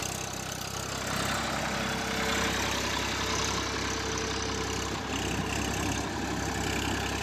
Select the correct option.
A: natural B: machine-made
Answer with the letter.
A